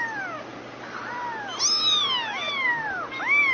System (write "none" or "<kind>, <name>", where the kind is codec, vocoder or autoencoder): none